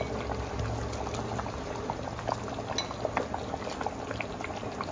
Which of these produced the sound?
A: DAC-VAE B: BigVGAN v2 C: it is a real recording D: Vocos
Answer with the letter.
C